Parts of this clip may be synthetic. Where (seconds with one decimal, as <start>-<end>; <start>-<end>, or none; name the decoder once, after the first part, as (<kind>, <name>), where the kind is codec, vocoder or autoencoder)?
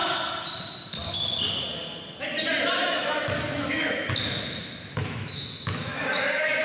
2.8-4.1 (autoencoder, DAC-VAE); 5.0-6.6